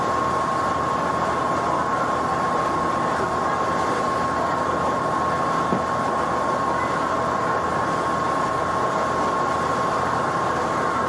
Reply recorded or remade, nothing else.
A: recorded